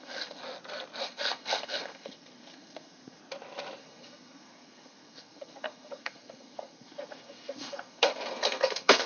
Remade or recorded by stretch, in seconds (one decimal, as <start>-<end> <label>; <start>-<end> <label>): 0.0-0.4 remade; 0.4-1.0 recorded; 1.0-3.2 remade; 3.2-3.8 recorded; 3.8-9.1 remade